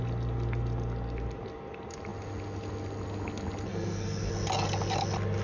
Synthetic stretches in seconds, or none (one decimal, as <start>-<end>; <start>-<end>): 3.7-4.3